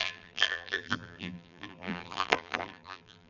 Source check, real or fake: fake